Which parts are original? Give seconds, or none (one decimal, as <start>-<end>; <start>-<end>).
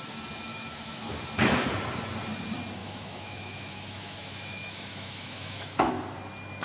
0.0-0.5; 1.2-2.8; 5.9-6.6